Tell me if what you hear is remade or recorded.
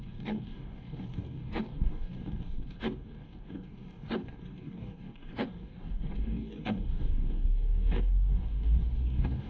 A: remade